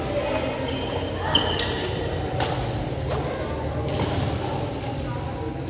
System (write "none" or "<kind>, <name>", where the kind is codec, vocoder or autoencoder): none